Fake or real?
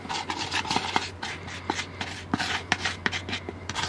real